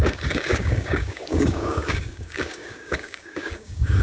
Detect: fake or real fake